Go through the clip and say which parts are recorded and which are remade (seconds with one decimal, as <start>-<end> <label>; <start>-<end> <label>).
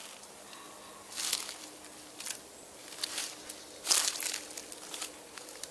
0.0-5.7 recorded